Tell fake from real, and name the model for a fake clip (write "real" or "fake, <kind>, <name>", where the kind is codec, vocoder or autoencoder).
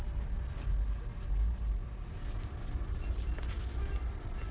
real